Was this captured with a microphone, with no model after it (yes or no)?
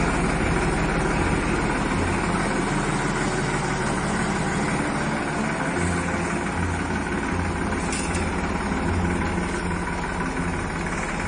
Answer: yes